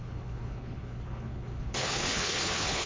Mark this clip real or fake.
fake